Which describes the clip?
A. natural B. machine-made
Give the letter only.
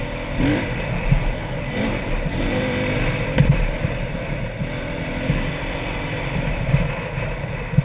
B